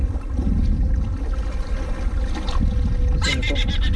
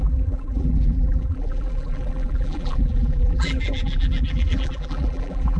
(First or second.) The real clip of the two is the first